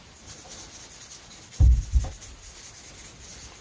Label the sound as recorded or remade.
recorded